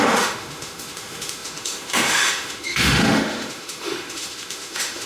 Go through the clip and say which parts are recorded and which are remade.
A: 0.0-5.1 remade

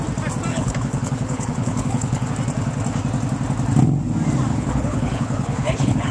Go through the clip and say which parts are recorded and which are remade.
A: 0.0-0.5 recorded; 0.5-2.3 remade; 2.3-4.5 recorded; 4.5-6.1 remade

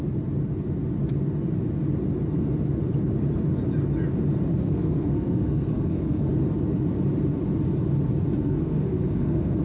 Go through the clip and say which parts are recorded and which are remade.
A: 0.0-4.5 recorded; 4.5-6.3 remade; 6.3-8.4 recorded; 8.4-9.6 remade

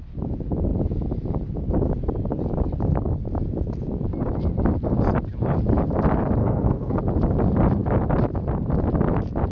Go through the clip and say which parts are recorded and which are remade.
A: 0.0-6.4 recorded; 6.4-7.0 remade; 7.0-9.5 recorded

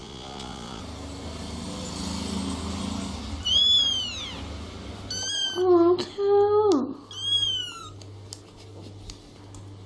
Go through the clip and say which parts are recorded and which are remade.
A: 0.0-0.8 remade; 0.8-9.9 recorded